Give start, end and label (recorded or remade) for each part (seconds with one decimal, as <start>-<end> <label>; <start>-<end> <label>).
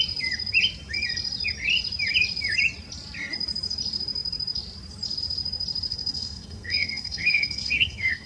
0.0-5.9 recorded; 5.9-8.3 remade